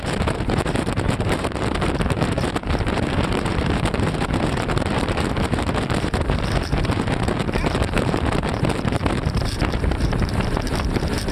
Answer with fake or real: fake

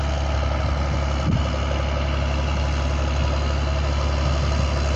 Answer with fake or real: real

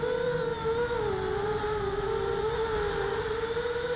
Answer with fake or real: real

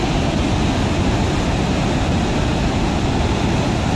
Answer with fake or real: real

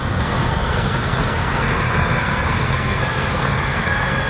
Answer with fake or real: fake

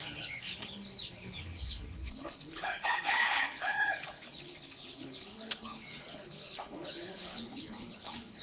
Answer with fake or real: fake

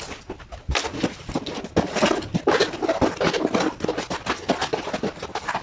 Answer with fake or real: real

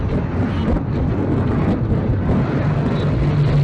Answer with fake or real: real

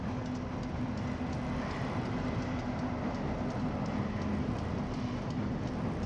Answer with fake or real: real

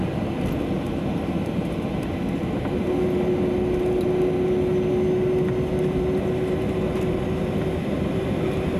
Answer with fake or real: real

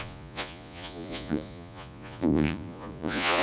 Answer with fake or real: fake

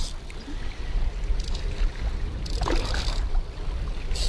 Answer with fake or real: fake